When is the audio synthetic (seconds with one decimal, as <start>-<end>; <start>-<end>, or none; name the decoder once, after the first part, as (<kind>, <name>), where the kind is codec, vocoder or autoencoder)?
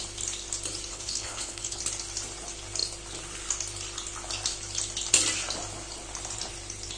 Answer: 0.9-1.8 (codec, HILCodec)